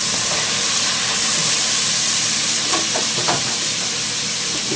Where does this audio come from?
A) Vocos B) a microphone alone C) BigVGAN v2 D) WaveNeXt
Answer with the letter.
C